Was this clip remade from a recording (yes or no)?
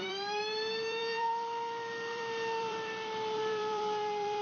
yes